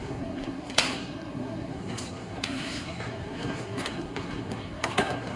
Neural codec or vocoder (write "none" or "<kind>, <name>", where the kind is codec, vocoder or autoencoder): codec, SNAC